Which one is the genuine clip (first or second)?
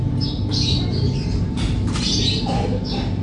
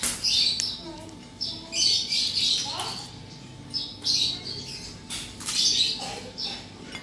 second